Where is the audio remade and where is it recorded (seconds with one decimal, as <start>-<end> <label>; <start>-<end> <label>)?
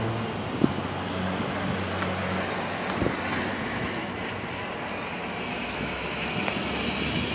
0.0-3.5 recorded; 3.5-4.1 remade; 4.1-5.5 recorded; 5.5-6.5 remade; 6.5-7.3 recorded